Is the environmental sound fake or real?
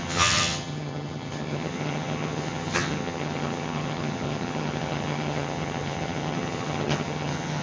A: fake